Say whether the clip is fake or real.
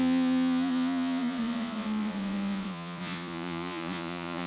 fake